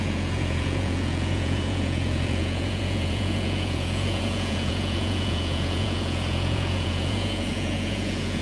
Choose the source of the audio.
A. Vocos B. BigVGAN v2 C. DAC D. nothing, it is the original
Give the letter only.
A